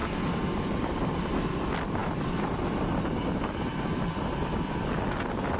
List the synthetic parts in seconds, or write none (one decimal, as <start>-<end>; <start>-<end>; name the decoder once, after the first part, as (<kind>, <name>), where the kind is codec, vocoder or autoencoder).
none